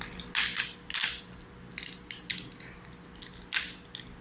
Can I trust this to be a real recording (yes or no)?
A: yes